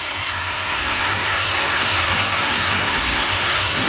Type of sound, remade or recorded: remade